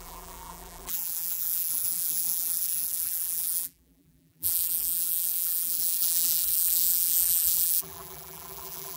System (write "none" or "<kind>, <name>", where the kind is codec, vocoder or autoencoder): vocoder, BigVGAN v2